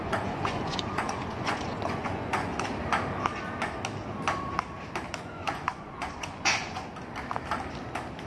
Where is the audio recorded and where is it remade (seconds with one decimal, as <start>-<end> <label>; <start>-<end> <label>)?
0.0-2.5 remade; 2.5-5.2 recorded; 5.2-6.9 remade; 6.9-8.3 recorded